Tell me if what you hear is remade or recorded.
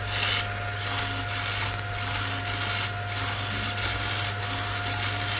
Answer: recorded